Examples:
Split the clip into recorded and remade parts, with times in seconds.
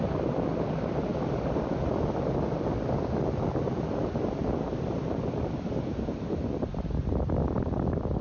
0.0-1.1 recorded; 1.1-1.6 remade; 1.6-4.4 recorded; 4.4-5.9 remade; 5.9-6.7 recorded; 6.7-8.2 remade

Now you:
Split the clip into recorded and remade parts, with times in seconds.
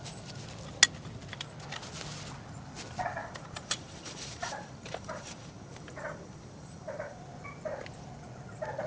0.0-3.2 recorded; 3.2-7.2 remade; 7.2-8.9 recorded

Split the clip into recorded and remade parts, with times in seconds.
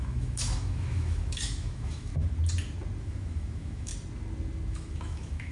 0.0-2.1 remade; 2.1-3.0 recorded; 3.0-3.9 remade; 3.9-4.7 recorded; 4.7-5.5 remade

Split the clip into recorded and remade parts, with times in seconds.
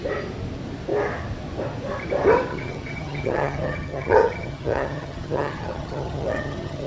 0.0-2.5 recorded; 2.5-6.9 remade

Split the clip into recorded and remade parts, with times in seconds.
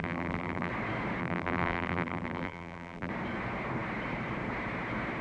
0.0-0.7 remade; 0.7-1.2 recorded; 1.2-3.1 remade; 3.1-5.2 recorded